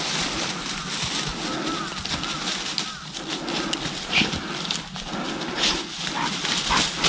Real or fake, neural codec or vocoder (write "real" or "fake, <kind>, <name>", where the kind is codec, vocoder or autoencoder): real